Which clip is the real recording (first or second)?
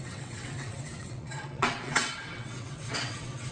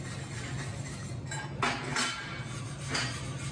second